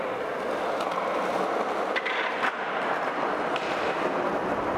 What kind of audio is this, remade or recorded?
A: recorded